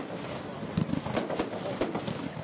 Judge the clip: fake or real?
real